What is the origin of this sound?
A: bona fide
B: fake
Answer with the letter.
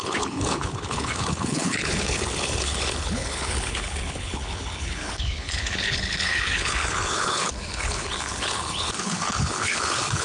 B